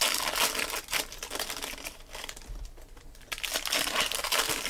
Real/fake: real